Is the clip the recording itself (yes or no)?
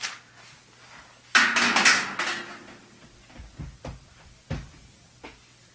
yes